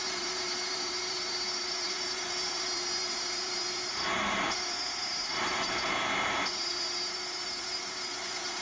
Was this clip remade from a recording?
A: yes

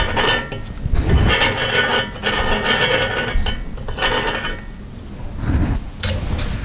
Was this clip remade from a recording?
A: no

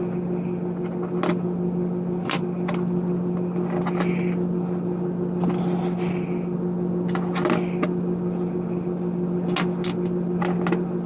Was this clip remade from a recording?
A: no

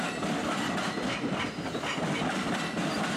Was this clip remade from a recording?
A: no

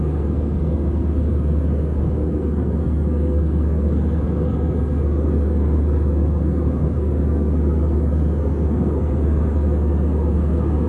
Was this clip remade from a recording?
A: yes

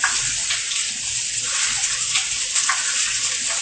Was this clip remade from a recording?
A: no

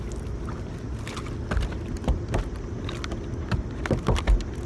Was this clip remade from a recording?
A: no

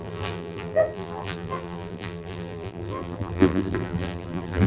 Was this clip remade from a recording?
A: yes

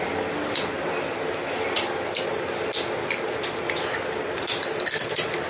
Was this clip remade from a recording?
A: no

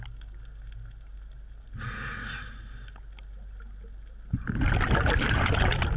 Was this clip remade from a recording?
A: no